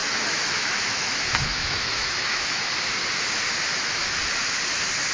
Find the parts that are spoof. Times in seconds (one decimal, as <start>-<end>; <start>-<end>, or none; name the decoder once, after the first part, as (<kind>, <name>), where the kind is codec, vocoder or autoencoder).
0.0-2.7 (autoencoder, DAC-VAE); 3.7-4.2